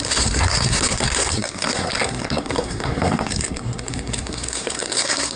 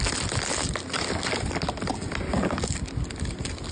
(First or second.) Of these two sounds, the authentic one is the second